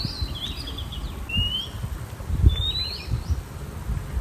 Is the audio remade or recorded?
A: recorded